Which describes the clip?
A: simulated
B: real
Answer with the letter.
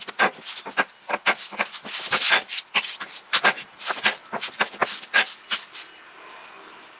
B